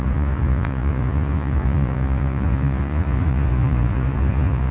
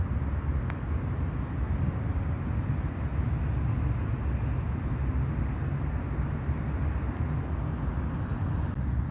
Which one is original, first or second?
second